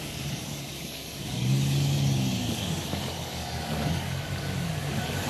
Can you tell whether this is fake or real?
fake